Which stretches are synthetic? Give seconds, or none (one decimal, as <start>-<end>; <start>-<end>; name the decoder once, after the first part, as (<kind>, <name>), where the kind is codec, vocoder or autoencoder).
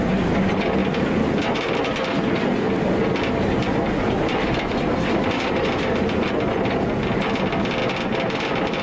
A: 0.8-5.9 (vocoder, BigVGAN v2)